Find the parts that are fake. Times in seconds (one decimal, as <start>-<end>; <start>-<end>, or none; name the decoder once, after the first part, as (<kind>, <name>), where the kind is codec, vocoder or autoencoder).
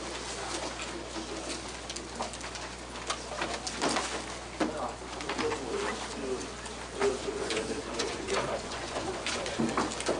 7.0-9.6 (vocoder, Vocos)